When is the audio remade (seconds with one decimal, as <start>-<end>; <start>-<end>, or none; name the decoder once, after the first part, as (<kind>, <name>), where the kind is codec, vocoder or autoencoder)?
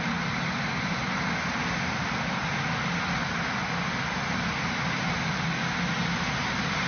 none